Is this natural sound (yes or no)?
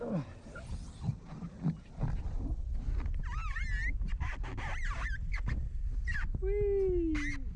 yes